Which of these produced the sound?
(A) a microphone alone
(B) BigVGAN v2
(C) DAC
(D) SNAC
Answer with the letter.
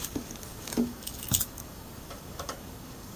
C